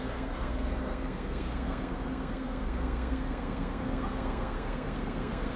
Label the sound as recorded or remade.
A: remade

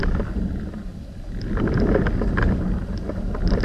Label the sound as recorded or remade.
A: remade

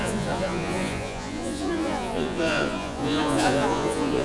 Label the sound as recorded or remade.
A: remade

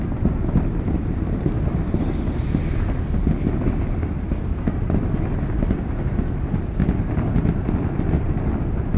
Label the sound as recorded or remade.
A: recorded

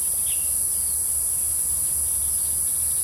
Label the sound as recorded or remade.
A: recorded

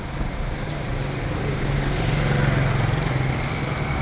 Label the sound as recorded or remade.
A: recorded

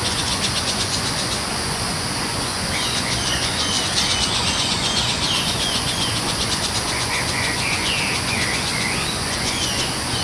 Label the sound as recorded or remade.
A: remade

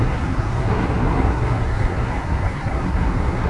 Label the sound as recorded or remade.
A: remade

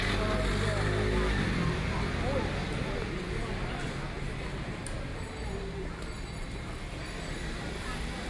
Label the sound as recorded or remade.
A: recorded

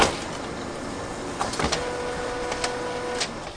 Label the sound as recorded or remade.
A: recorded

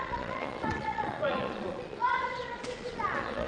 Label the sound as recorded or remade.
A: remade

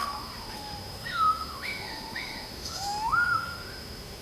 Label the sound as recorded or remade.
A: remade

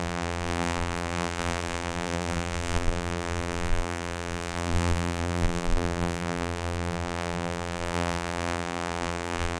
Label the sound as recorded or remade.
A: remade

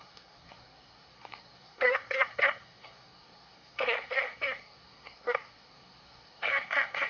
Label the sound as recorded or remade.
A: remade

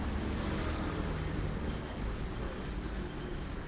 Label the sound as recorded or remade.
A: recorded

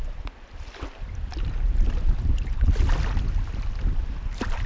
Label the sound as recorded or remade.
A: recorded